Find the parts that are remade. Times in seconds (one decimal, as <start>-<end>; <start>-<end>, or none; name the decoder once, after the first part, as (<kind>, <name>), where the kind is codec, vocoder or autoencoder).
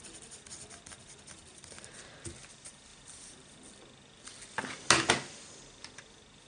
1.5-2.0 (vocoder, BigVGAN v2)